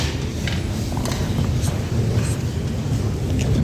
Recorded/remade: recorded